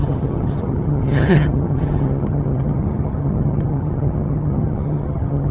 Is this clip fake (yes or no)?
yes